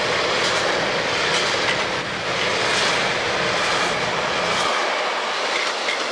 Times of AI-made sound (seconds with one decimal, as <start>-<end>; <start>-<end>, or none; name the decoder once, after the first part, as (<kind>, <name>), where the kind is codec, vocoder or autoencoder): none